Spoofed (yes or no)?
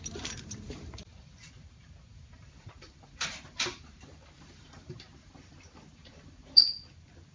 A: yes